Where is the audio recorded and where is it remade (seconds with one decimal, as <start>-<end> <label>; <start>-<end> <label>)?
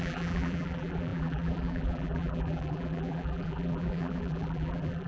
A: 0.0-5.1 remade